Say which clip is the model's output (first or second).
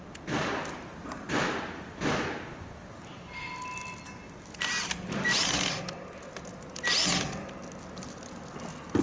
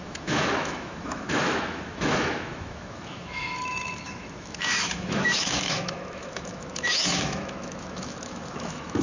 second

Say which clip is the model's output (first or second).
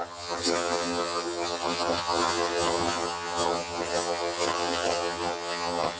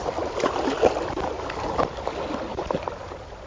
first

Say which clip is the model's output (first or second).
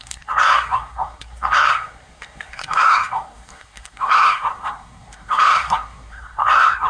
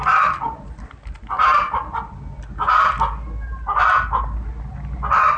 first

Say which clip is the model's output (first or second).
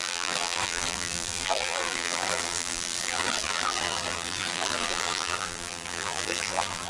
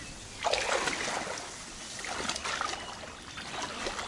first